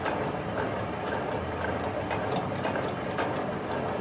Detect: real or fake real